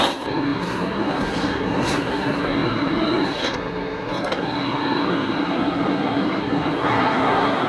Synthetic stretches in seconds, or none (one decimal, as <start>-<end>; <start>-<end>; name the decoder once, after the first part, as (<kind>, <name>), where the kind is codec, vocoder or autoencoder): 0.0-7.7 (codec, SNAC)